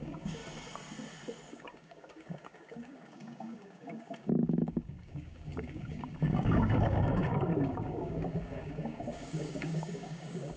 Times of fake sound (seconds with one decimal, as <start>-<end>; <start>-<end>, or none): 0.0-0.4; 1.5-10.6